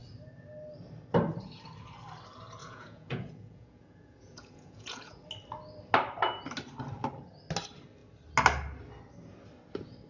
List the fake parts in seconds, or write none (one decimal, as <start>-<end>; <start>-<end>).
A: 2.6-5.2